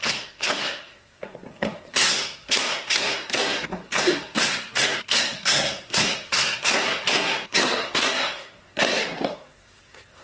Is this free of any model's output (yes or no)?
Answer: no